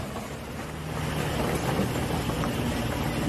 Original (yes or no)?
yes